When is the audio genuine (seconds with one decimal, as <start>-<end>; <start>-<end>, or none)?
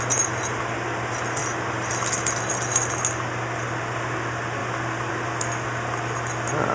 0.0-4.6; 5.1-6.7